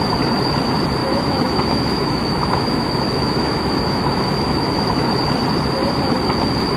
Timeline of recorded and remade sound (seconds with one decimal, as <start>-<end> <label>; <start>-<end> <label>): 0.0-1.0 recorded; 1.0-5.1 remade; 5.1-6.8 recorded